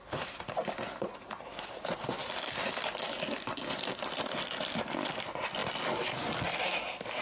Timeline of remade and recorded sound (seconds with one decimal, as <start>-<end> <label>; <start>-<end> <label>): 0.0-0.6 remade; 0.6-4.9 recorded; 4.9-5.6 remade; 5.6-6.6 recorded; 6.6-7.2 remade